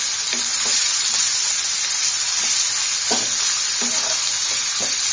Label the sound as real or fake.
real